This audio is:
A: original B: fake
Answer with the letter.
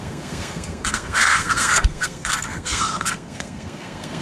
B